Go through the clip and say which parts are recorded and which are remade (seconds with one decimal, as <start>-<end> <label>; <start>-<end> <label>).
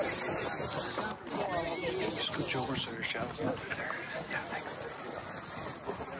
0.0-6.2 recorded